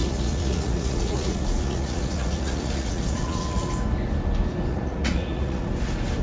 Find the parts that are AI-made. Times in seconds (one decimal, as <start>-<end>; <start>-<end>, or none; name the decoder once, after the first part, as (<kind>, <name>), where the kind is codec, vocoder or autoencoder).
0.0-3.7 (vocoder, Vocos); 4.7-5.7